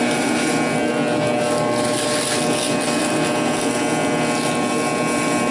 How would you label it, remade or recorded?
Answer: recorded